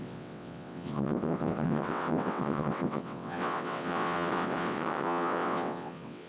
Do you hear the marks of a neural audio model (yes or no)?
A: yes